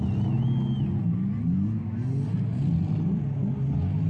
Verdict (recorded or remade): recorded